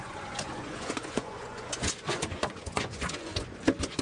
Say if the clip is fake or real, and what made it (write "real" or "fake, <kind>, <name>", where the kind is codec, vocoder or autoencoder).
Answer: fake, vocoder, Vocos